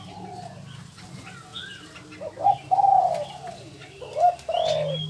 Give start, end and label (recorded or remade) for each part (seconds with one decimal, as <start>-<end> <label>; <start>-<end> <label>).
0.0-5.1 recorded